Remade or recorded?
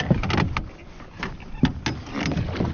recorded